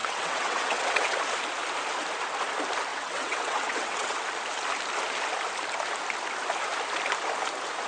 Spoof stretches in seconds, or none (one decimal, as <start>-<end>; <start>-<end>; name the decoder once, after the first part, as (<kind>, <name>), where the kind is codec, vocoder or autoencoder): 0.0-1.2 (vocoder, WaveNeXt); 2.9-4.2